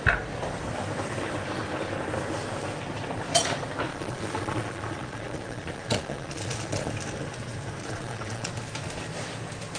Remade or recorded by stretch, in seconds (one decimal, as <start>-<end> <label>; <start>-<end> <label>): 0.0-3.9 recorded; 3.9-6.9 remade; 6.9-7.8 recorded; 7.8-8.5 remade; 8.5-9.8 recorded